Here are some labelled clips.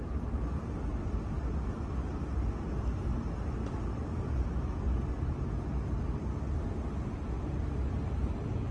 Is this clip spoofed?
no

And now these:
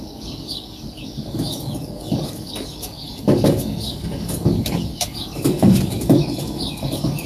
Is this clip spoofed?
yes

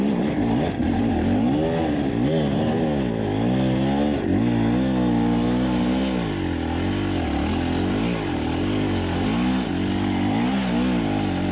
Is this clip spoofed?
no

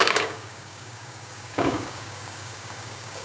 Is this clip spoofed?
yes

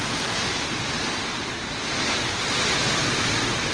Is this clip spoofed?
no